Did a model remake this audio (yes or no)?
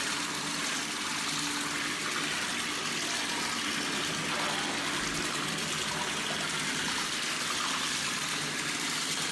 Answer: no